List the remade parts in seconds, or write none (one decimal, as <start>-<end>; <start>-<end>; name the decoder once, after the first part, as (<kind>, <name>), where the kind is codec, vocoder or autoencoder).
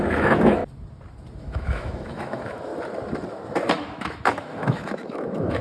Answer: 0.0-0.6 (autoencoder, DAC-VAE); 1.4-2.7; 3.7-5.6